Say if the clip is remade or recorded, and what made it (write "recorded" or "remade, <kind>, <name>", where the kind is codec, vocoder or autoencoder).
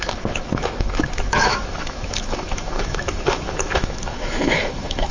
remade, autoencoder, DAC-VAE